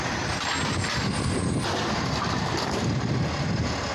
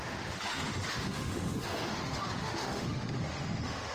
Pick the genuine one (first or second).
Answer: first